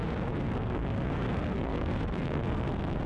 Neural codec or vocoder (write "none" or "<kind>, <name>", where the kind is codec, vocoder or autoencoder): codec, SNAC